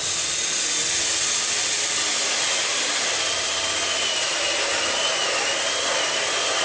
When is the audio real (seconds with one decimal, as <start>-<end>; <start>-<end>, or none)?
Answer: 0.0-6.6